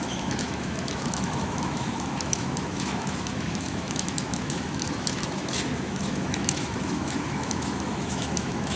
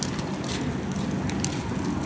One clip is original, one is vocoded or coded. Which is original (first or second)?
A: second